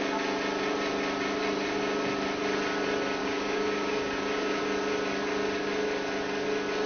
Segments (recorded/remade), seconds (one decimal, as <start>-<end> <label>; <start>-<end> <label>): 0.0-3.2 recorded; 3.2-4.6 remade; 4.6-6.9 recorded